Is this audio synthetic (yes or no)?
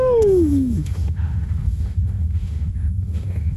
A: yes